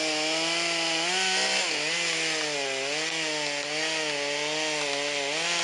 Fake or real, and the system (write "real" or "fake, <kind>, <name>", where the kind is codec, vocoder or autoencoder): real